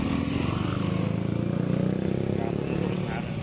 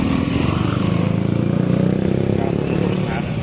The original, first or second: first